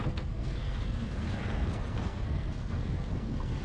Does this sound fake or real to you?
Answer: fake